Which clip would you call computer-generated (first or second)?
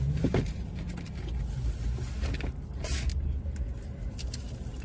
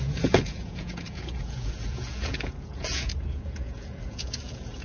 second